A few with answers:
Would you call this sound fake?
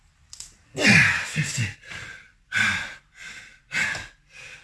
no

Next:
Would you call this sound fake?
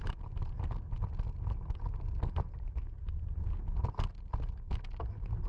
no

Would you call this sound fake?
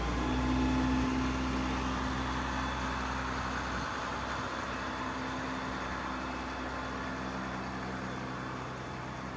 no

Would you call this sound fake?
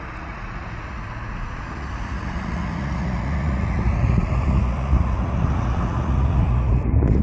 yes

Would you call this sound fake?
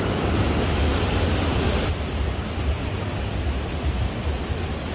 no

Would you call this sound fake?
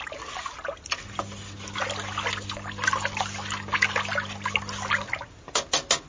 no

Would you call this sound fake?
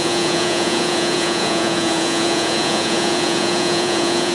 yes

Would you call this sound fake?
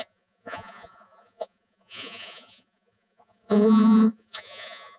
yes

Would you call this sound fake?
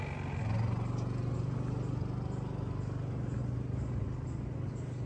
no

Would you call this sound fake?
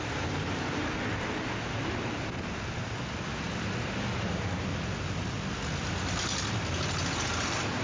no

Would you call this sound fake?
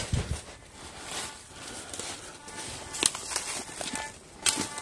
no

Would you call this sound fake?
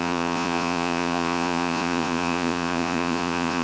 yes